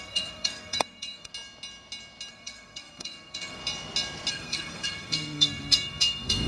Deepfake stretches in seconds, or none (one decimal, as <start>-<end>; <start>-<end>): 0.0-1.3; 2.3-3.6; 4.3-6.5